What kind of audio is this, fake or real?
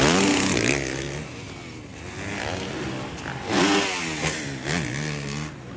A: real